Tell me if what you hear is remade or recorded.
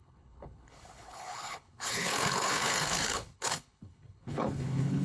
remade